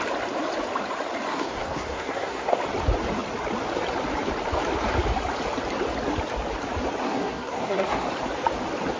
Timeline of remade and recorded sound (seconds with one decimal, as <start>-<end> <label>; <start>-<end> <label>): 0.0-1.3 recorded; 1.3-2.6 remade; 2.6-7.0 recorded; 7.0-8.1 remade; 8.1-9.0 recorded